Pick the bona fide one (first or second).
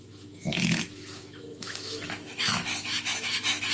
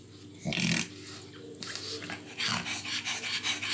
second